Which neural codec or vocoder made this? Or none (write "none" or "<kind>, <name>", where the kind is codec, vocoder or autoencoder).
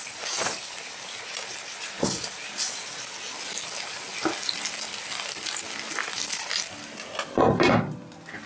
none